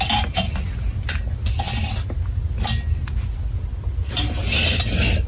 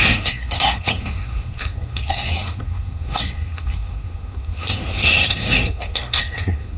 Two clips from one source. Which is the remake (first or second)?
second